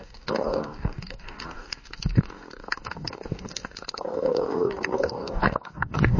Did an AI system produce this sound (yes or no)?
yes